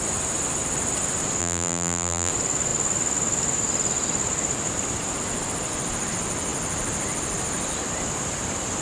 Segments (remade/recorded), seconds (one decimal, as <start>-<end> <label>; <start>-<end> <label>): 0.0-1.4 recorded; 1.4-2.3 remade; 2.3-8.8 recorded